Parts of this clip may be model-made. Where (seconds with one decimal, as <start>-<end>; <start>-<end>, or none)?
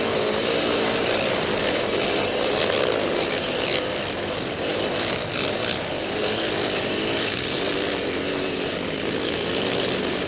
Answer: none